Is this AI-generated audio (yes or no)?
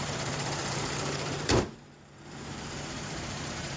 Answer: yes